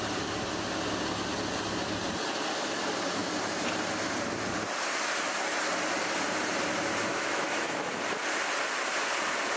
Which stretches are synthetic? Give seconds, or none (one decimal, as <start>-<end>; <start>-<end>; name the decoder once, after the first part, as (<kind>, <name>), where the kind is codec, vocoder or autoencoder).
7.1-7.9 (autoencoder, DAC-VAE)